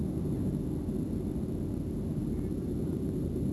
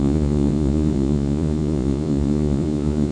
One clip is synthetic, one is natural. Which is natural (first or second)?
first